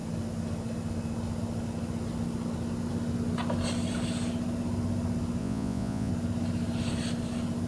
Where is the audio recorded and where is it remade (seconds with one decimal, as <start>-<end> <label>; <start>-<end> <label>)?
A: 0.0-5.4 recorded; 5.4-6.1 remade; 6.1-7.7 recorded